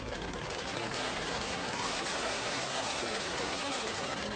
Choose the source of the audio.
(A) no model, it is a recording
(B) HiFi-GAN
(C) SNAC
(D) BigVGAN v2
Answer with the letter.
C